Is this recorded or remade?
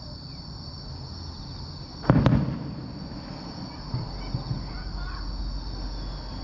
recorded